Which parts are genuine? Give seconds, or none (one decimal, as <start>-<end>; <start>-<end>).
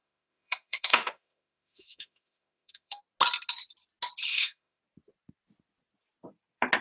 3.0-4.3; 4.8-6.8